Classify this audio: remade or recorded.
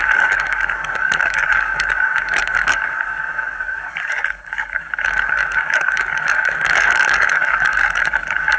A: remade